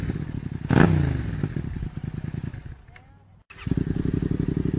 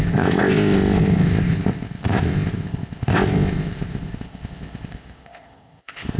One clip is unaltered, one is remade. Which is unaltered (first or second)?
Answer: first